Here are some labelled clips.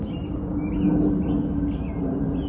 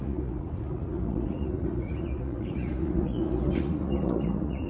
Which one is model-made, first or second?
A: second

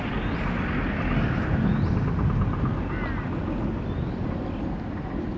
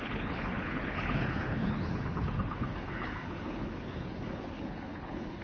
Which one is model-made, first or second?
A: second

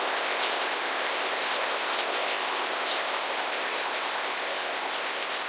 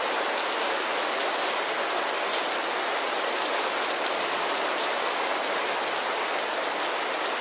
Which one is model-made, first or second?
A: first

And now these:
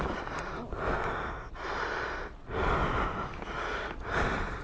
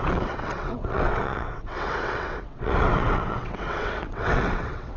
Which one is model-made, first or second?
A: second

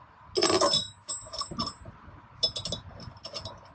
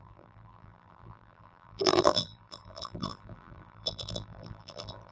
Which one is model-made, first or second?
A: second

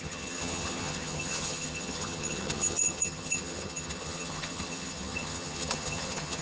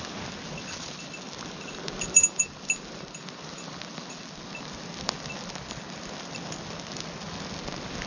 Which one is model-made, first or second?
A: first